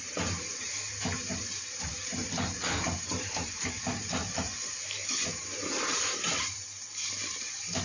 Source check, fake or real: fake